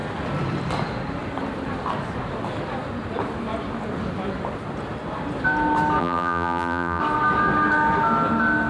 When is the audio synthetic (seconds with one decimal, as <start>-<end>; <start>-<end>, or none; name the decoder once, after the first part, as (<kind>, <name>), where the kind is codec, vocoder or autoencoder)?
6.0-7.0 (vocoder, BigVGAN v2)